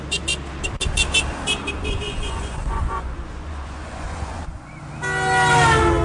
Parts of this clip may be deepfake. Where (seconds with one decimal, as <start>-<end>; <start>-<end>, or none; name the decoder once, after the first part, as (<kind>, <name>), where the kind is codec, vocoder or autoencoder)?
1.8-4.8 (vocoder, Vocos)